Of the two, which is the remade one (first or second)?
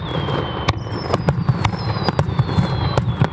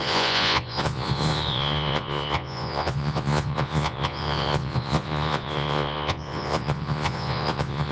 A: second